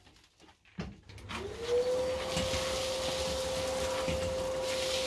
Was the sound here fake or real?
real